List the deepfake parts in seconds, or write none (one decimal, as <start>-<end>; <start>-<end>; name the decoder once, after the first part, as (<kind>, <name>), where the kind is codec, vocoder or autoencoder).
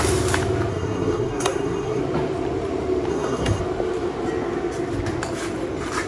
0.7-2.0 (codec, SNAC); 3.1-3.6